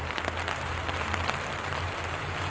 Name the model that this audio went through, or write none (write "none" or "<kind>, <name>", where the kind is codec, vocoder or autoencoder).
vocoder, BigVGAN v2